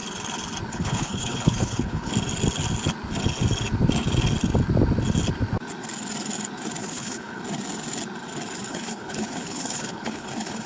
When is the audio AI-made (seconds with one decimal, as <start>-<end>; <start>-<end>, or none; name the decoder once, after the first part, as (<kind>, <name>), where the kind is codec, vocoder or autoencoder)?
0.7-2.1 (codec, HILCodec); 6.8-7.4; 8.7-10.7